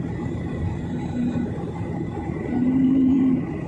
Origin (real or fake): fake